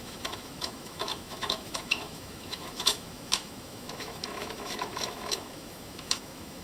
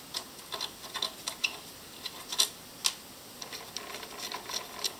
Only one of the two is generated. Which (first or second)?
first